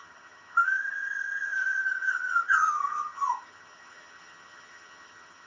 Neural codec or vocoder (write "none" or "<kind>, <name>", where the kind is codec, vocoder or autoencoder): vocoder, HiFi-GAN